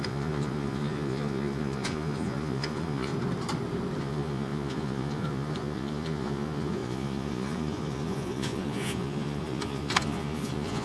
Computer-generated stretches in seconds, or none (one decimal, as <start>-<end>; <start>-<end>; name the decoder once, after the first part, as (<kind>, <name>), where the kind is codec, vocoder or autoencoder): 0.0-3.1 (vocoder, Vocos); 4.0-10.8